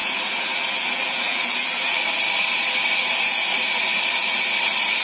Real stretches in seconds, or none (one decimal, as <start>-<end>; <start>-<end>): 2.0-5.0